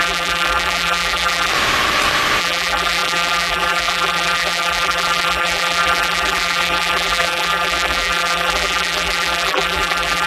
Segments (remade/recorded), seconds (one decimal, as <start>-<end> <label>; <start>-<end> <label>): 0.0-1.5 remade; 1.5-2.4 recorded; 2.4-10.3 remade